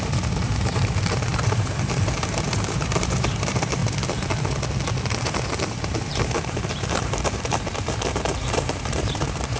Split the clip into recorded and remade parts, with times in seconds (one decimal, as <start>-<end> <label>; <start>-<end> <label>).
0.0-3.8 remade; 3.8-5.2 recorded; 5.2-9.6 remade